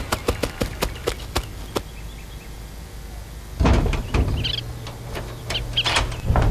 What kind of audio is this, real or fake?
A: real